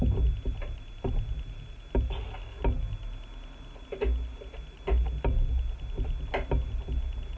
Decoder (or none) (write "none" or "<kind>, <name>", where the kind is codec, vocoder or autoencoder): none